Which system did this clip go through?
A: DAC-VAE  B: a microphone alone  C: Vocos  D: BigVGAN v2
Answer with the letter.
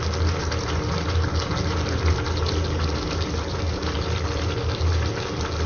B